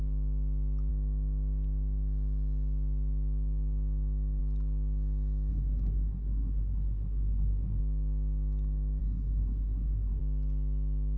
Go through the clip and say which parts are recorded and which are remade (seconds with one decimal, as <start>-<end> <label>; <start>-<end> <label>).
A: 0.0-5.5 recorded; 5.5-7.8 remade; 7.8-9.0 recorded; 9.0-10.2 remade; 10.2-11.2 recorded